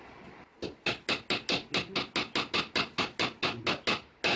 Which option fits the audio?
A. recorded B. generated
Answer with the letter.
A